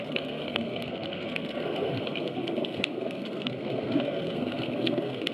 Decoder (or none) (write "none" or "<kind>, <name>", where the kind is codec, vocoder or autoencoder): codec, SNAC